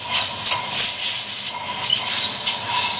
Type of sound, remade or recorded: recorded